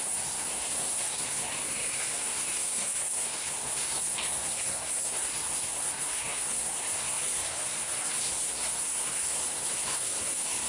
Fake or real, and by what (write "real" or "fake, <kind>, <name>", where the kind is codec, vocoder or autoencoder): fake, codec, SNAC